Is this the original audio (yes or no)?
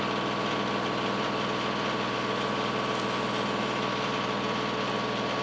yes